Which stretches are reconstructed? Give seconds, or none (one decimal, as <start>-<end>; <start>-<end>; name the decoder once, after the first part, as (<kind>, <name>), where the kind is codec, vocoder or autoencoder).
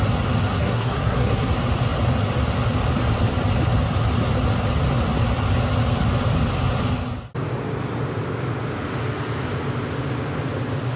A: 0.5-1.5 (codec, SNAC)